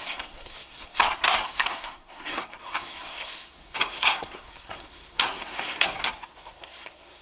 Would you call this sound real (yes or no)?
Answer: no